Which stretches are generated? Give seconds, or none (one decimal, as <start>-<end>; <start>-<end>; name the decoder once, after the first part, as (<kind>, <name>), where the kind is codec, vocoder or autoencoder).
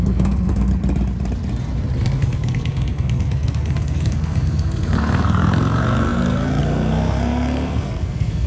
0.0-0.7 (codec, SNAC); 2.0-8.5